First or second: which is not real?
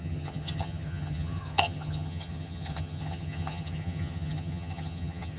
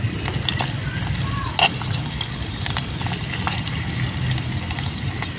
first